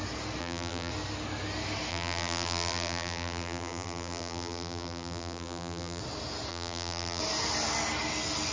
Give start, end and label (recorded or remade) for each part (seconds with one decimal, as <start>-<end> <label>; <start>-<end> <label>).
0.0-0.4 recorded; 0.4-0.9 remade; 0.9-1.9 recorded; 1.9-6.0 remade; 6.0-6.5 recorded; 6.5-7.2 remade; 7.2-8.5 recorded